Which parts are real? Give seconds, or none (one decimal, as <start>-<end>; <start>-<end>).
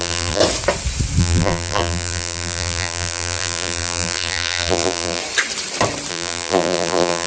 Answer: 0.4-1.2; 5.2-6.1